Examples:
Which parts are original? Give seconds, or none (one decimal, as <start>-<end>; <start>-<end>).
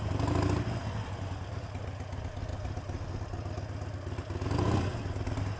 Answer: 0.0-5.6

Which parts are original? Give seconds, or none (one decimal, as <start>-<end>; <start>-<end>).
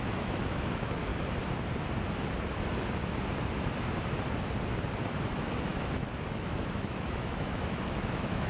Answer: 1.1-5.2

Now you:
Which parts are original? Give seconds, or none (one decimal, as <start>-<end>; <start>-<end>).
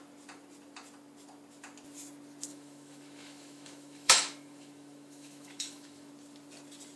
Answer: 0.0-2.5; 6.1-7.0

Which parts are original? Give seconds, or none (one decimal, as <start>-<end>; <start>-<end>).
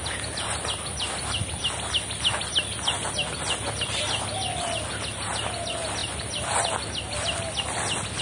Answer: 0.0-8.2